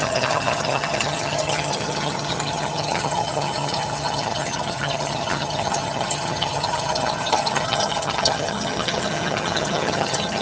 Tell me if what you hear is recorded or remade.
remade